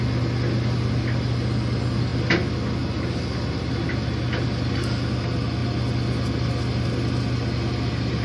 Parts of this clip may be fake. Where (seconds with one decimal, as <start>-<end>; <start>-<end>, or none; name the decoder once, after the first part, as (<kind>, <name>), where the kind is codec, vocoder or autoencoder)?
none